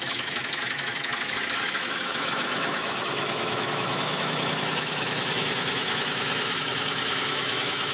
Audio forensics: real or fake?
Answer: fake